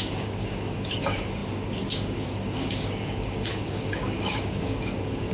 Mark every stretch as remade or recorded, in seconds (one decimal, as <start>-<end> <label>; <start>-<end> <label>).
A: 0.0-5.3 remade